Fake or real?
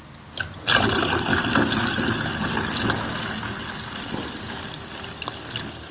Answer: real